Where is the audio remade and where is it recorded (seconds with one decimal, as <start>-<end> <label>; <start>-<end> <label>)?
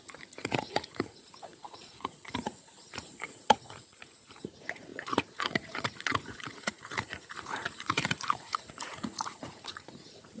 0.0-10.4 remade